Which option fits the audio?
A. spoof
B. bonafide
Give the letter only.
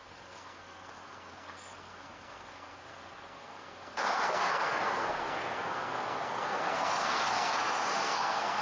A